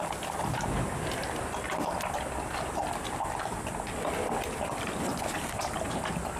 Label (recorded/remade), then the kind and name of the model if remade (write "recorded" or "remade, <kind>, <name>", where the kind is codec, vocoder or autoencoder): recorded